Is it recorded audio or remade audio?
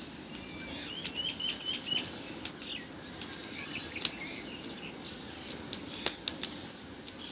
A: recorded